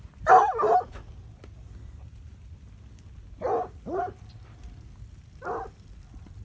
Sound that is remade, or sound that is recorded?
recorded